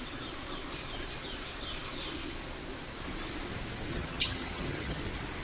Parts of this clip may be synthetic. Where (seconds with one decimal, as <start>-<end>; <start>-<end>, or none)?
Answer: 3.9-5.0